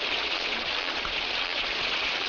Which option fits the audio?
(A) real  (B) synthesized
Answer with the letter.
B